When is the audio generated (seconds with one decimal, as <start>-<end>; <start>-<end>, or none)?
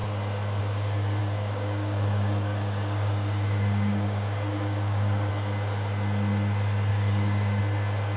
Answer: 1.2-5.3; 6.9-7.6